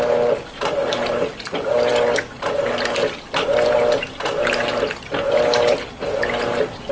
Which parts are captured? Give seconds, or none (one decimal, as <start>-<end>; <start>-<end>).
0.0-6.9